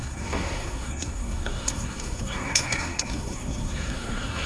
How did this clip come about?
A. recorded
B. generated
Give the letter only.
B